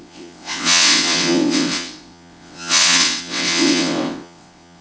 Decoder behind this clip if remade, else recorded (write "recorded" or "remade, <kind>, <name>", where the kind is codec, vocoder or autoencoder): remade, vocoder, WaveNeXt